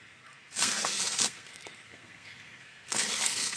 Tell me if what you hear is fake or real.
fake